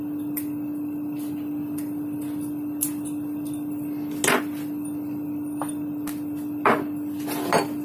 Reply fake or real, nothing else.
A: real